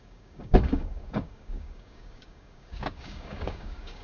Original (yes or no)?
no